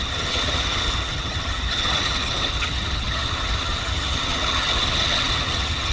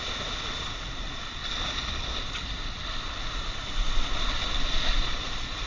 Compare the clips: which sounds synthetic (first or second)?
first